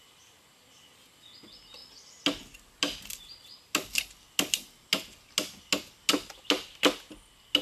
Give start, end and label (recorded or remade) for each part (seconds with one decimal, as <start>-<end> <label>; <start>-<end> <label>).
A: 0.0-7.6 recorded